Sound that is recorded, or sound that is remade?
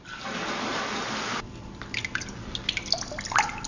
recorded